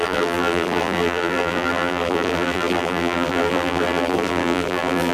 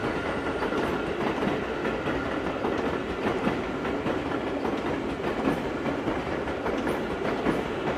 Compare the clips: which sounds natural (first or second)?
second